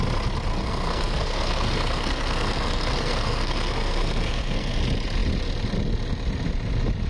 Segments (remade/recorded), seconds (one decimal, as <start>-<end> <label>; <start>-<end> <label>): 0.0-0.5 recorded; 0.5-4.8 remade; 4.8-7.1 recorded